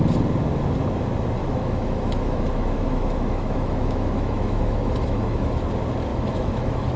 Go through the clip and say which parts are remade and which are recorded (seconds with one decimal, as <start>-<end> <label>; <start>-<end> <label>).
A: 0.0-1.4 recorded; 1.4-5.6 remade; 5.6-6.1 recorded; 6.1-7.0 remade